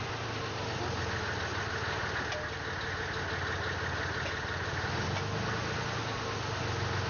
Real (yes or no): yes